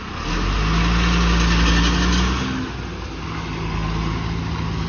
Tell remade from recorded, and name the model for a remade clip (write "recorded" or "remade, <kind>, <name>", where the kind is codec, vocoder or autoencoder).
recorded